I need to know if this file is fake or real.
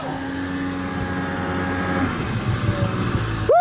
real